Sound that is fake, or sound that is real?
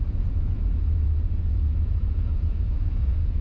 fake